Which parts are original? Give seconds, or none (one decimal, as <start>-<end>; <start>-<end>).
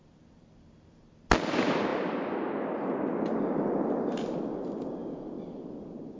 0.0-6.2